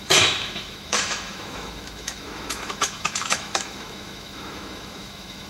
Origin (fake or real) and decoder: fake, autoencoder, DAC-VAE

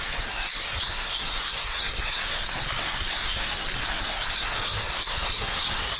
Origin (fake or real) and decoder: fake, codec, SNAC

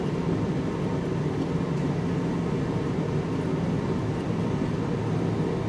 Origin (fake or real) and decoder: real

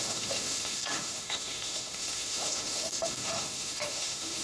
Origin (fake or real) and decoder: fake, autoencoder, DAC-VAE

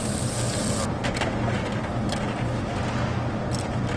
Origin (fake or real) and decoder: real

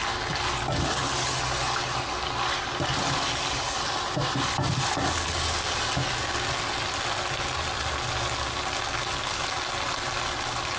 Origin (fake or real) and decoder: real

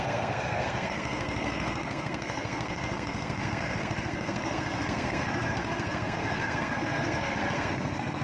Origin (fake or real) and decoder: fake, codec, SNAC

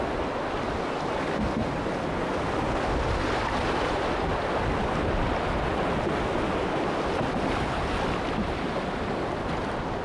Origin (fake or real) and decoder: real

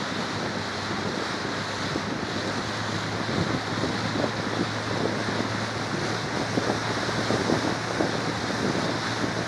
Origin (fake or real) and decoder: real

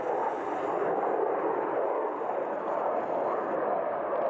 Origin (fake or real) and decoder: real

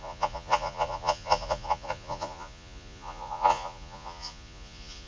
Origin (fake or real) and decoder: fake, vocoder, Vocos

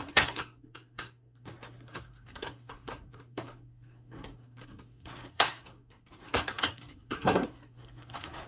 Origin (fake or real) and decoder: fake, codec, SNAC